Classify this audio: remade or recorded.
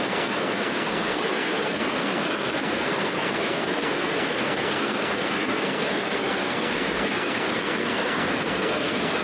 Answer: remade